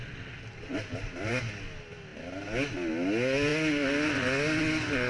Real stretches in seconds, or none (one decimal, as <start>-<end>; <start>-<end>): 0.0-0.7; 1.4-5.1